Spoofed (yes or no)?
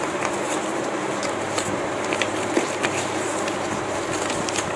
no